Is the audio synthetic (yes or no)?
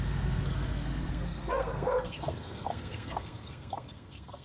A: yes